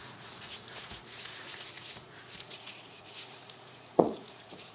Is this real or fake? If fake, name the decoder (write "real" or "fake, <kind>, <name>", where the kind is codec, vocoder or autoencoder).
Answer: fake, vocoder, Vocos